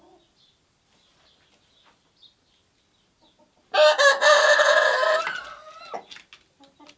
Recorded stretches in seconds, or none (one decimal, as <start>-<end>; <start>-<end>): 0.0-4.4; 5.2-7.0